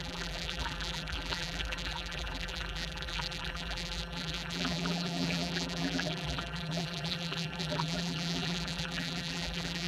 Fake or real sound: fake